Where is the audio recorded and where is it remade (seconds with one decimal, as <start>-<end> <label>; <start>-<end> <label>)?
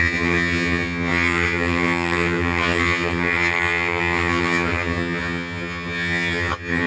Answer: 0.0-6.9 remade